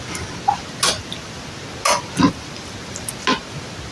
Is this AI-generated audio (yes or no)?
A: no